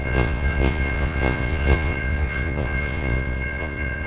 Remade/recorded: remade